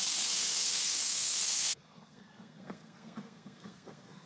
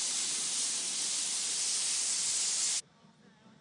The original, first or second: second